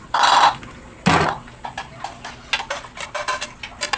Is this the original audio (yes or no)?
yes